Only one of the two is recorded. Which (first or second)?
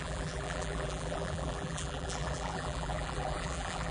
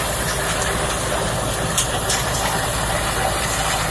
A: second